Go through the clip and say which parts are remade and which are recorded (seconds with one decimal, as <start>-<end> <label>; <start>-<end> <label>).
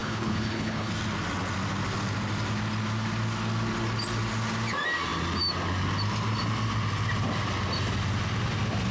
0.0-0.9 remade; 0.9-8.9 recorded